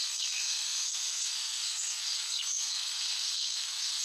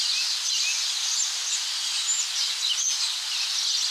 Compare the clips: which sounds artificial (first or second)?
first